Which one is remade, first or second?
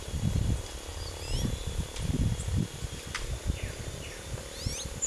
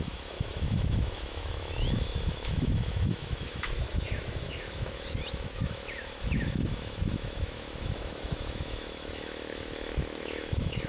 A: second